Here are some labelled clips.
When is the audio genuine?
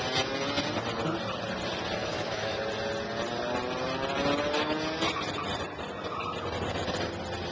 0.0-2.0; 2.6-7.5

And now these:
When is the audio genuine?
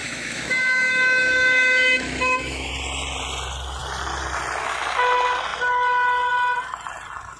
2.7-7.4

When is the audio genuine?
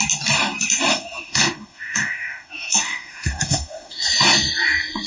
0.0-0.9; 4.0-5.1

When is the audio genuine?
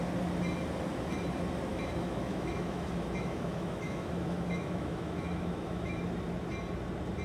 0.0-1.7; 6.0-7.2